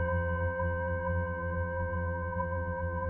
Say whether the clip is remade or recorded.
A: remade